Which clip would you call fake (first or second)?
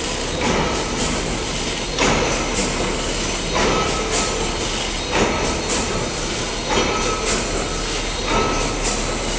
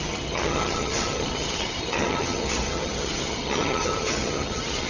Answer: second